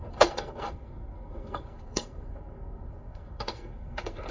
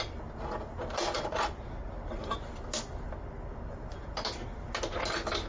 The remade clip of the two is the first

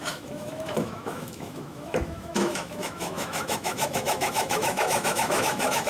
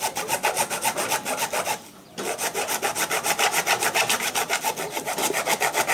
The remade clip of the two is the first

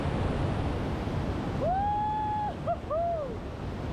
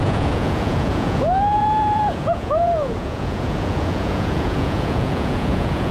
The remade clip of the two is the second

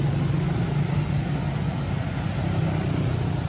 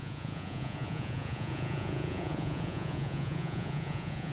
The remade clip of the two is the second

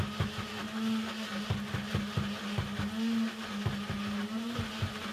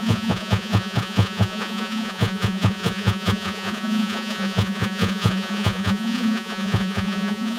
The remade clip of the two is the second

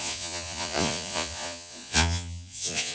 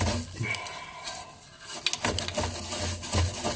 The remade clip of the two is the first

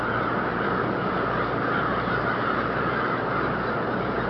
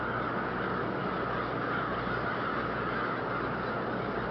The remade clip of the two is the first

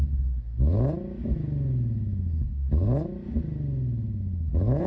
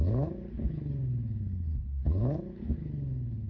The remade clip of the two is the second